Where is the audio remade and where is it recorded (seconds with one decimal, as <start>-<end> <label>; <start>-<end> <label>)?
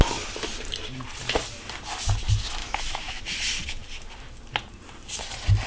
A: 0.0-2.6 recorded; 2.6-3.2 remade; 3.2-5.7 recorded